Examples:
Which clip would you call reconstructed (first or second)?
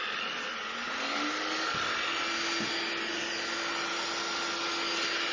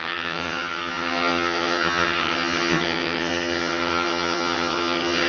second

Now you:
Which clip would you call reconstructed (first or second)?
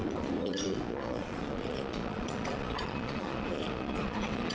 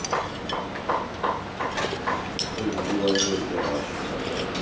first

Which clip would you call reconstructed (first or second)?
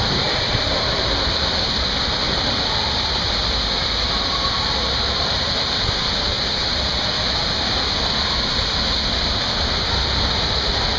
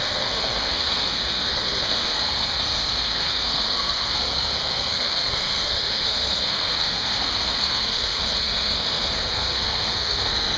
second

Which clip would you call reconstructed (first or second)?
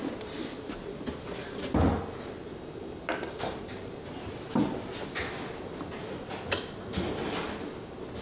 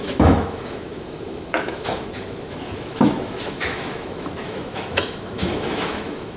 second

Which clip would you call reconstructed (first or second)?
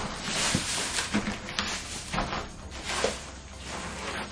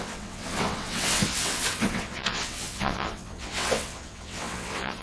second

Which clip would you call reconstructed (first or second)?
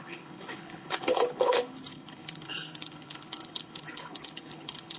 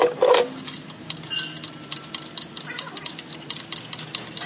first